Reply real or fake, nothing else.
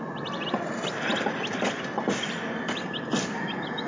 real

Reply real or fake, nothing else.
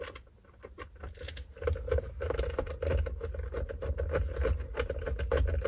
real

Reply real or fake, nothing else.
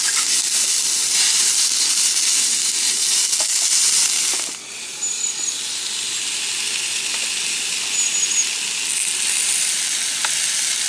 real